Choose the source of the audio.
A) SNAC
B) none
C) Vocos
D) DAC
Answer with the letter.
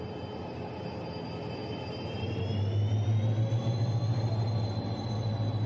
B